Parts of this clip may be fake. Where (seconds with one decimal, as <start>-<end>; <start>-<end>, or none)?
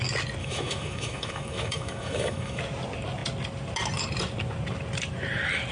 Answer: 0.4-2.6